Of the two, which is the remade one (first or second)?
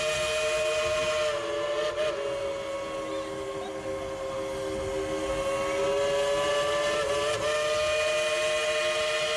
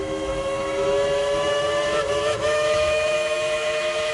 second